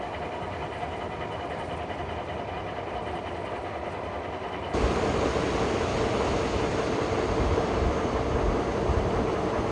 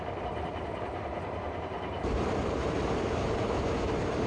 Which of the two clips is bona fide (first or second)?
first